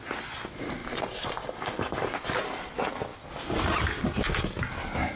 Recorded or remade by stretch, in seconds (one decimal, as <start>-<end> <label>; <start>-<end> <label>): 0.0-5.2 recorded